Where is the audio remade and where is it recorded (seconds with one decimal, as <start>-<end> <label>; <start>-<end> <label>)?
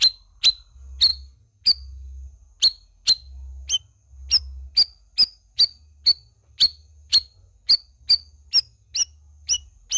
0.0-10.0 recorded